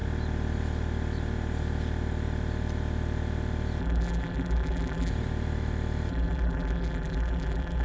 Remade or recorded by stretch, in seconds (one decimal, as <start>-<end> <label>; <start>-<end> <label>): 0.0-3.8 recorded; 3.8-5.1 remade; 5.1-6.1 recorded; 6.1-7.8 remade